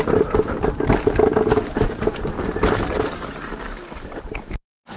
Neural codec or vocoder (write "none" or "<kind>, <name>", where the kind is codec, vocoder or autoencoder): none